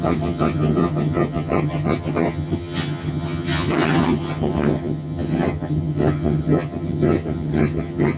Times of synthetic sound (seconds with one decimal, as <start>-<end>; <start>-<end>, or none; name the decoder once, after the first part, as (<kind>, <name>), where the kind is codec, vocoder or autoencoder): 0.0-8.2 (vocoder, HiFi-GAN)